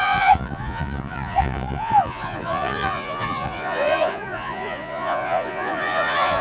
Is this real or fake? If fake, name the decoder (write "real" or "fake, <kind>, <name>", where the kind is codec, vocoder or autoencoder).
fake, vocoder, Vocos